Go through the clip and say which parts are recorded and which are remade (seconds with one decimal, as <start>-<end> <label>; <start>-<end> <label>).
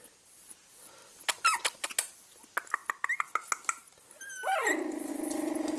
0.0-5.8 recorded